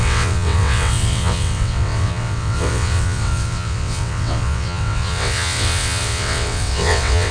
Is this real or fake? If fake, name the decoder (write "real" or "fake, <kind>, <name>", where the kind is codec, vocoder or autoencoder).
fake, vocoder, WaveNeXt